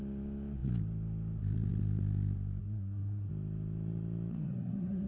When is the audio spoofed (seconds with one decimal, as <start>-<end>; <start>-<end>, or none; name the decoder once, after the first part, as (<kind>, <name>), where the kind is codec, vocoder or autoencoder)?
2.6-3.3 (codec, SNAC); 4.3-5.1